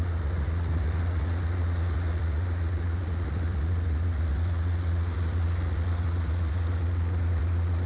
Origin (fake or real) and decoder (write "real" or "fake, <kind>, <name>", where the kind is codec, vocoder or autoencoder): fake, vocoder, Vocos